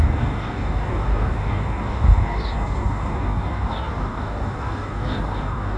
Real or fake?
fake